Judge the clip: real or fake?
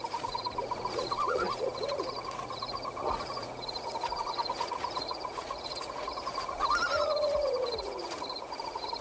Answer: fake